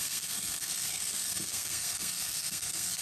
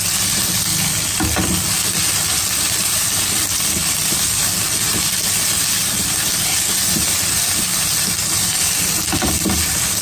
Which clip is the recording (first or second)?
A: second